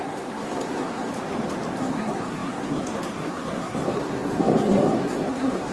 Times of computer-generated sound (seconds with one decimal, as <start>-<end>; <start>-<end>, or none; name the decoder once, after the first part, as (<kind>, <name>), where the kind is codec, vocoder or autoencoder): 0.0-1.1 (codec, SNAC); 1.8-5.7